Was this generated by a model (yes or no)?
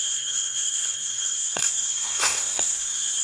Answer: yes